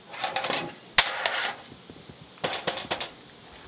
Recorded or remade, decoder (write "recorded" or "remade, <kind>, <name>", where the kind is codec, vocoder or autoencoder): recorded